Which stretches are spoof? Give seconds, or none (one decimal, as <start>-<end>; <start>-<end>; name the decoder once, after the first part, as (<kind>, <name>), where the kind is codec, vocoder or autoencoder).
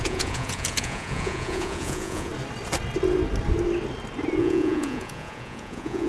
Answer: 0.0-2.3 (vocoder, Vocos); 4.4-6.1